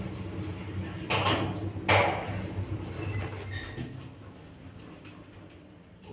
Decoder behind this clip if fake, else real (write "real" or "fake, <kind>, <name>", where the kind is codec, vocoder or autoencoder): real